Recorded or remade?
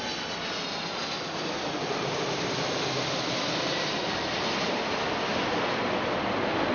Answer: recorded